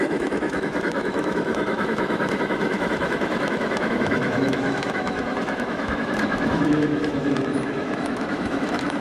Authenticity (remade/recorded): remade